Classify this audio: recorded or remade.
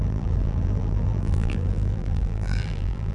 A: remade